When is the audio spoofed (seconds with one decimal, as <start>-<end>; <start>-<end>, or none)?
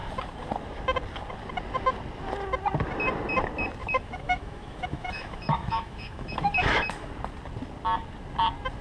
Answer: 3.8-7.1